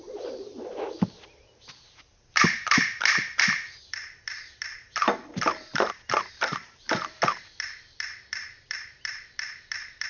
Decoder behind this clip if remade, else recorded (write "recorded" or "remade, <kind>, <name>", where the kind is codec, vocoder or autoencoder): remade, vocoder, BigVGAN v2